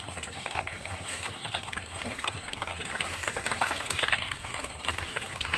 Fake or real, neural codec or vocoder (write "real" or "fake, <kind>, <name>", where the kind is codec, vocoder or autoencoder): fake, codec, SNAC